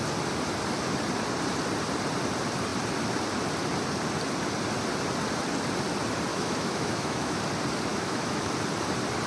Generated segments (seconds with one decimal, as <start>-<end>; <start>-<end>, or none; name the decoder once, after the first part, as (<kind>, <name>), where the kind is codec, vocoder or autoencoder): 6.3-7.4 (autoencoder, DAC-VAE); 7.9-8.5